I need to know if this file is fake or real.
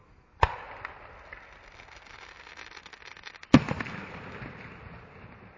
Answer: real